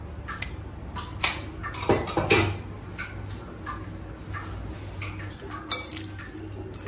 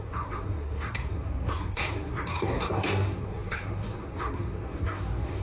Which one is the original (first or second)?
first